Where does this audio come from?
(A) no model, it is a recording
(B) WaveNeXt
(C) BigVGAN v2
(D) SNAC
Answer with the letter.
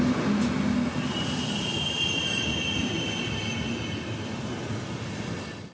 A